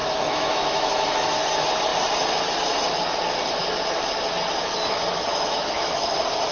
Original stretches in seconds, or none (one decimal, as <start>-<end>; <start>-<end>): 1.3-5.1; 6.1-6.5